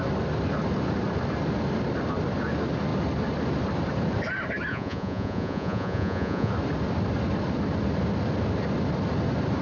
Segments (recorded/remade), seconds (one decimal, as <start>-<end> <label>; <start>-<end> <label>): 0.0-4.7 recorded; 4.7-6.5 remade; 6.5-9.6 recorded